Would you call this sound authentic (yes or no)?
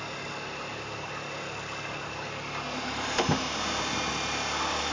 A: yes